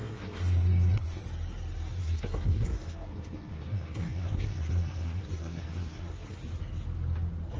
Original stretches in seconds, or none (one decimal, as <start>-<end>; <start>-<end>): 1.2-2.0; 6.4-7.6

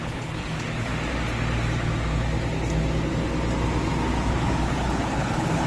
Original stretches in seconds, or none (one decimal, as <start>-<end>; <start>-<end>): 0.9-4.3

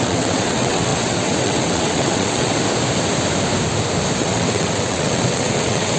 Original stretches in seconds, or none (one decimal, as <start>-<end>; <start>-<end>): 2.6-4.2